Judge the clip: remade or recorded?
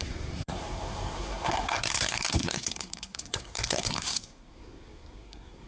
remade